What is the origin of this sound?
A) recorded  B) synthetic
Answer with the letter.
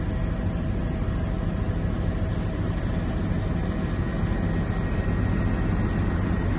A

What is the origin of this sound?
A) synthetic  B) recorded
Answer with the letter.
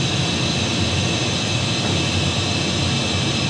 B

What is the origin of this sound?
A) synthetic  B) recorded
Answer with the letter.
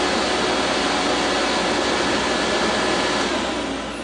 B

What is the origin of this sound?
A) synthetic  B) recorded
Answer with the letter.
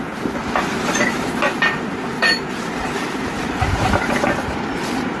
A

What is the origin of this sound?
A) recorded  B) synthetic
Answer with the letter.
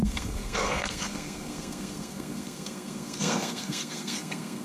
B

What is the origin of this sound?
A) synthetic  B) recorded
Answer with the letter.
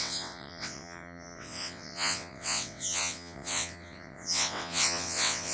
A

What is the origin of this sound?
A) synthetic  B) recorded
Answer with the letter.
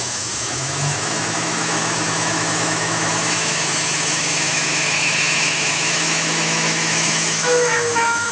A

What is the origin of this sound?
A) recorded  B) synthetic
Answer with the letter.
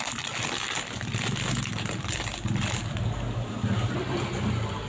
A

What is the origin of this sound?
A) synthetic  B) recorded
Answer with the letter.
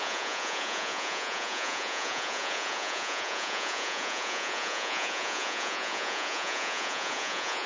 A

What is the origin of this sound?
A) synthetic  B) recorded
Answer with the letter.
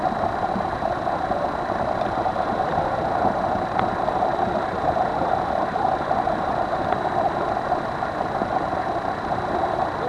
B